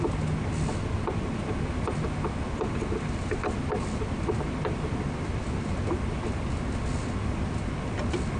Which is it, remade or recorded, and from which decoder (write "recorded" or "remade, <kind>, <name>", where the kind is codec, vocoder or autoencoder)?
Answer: recorded